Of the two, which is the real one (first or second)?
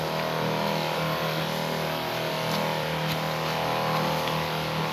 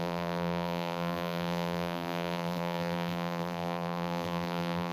first